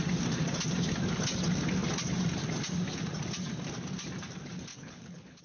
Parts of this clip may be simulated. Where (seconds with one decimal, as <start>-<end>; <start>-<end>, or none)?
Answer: 4.7-5.4